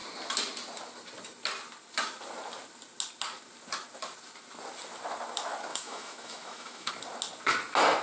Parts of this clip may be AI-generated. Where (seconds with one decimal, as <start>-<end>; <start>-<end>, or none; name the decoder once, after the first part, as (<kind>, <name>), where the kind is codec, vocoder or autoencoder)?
5.7-6.9 (autoencoder, DAC-VAE)